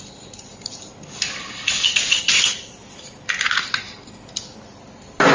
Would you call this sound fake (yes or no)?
no